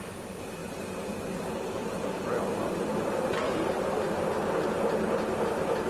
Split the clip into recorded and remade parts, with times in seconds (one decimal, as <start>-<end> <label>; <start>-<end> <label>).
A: 0.0-5.9 recorded